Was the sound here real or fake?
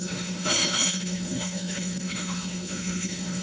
fake